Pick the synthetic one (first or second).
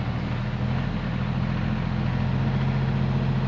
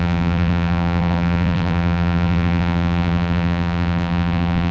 second